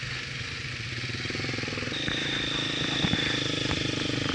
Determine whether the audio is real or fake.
real